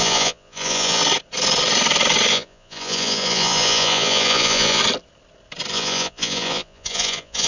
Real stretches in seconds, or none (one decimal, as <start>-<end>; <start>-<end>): 1.0-2.3; 4.8-5.7